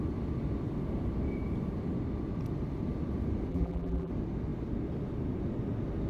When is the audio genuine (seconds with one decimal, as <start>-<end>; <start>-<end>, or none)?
0.0-3.5; 4.1-6.1